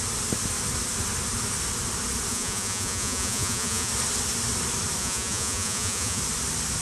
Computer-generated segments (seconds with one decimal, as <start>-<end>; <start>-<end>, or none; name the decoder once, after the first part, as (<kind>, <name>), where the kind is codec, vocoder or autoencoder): 2.3-3.9 (vocoder, Vocos); 5.0-6.2